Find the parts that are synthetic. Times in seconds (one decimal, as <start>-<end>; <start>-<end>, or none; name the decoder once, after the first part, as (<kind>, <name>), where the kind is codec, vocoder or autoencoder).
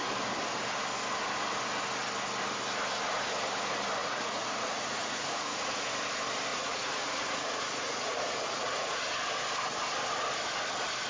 4.0-5.8 (vocoder, Vocos); 6.5-9.0